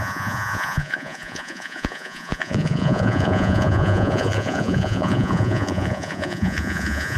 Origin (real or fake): fake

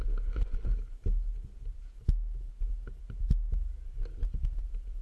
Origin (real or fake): real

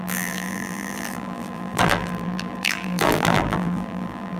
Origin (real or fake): fake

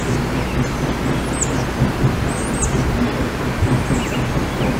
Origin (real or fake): real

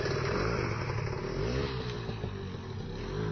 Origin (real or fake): real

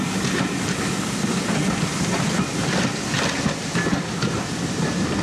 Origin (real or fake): real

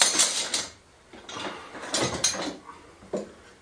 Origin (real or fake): real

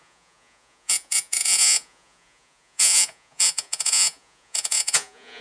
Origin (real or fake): fake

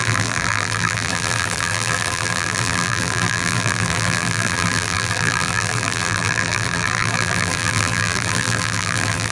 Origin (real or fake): fake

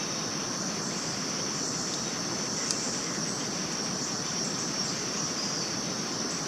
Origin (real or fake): real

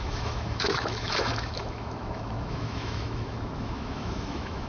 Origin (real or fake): fake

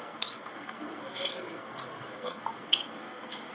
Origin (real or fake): fake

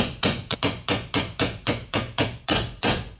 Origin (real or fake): fake